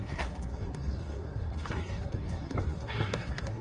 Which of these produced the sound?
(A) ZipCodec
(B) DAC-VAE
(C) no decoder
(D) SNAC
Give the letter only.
D